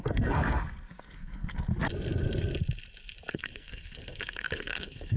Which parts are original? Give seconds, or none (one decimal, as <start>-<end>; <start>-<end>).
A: 1.7-3.3